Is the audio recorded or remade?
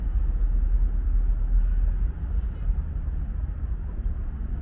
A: recorded